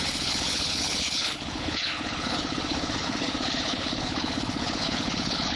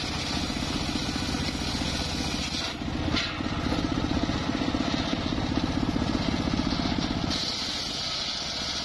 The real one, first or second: second